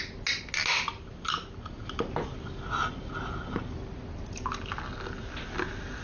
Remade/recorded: recorded